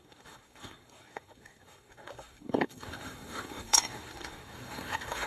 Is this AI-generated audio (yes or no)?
yes